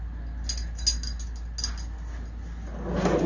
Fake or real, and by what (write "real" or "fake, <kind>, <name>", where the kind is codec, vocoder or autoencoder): real